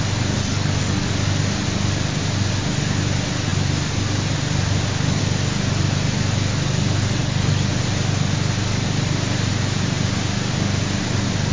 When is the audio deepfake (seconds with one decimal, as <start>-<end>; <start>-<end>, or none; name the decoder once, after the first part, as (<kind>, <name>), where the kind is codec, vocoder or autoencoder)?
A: 0.4-1.1 (codec, DAC); 7.2-7.7